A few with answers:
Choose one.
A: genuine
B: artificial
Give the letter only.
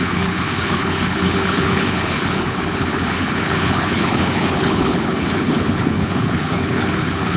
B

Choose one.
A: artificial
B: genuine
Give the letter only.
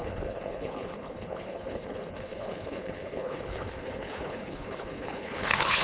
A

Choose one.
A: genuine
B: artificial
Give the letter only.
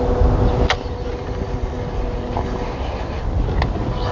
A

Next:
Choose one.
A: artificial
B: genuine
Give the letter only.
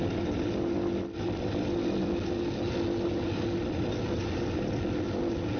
B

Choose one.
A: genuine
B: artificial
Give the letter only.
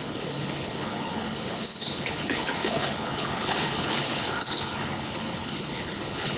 B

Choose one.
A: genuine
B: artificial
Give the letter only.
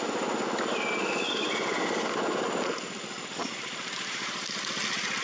A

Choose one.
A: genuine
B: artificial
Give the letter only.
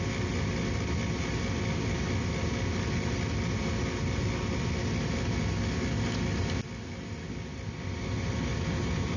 A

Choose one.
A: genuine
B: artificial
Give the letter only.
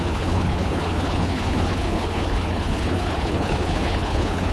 B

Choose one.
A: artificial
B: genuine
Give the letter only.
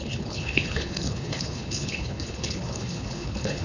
A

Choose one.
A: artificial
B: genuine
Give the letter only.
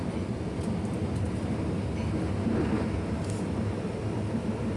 B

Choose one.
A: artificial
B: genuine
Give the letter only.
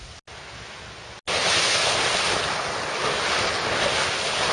B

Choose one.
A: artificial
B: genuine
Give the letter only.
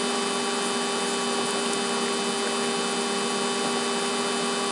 B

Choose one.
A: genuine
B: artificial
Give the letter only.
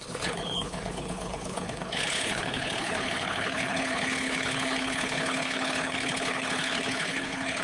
B